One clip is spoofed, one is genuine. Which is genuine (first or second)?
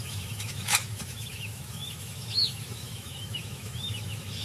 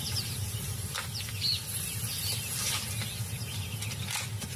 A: second